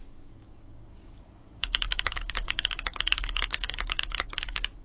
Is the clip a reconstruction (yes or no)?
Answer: yes